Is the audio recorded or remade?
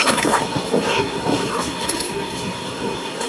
remade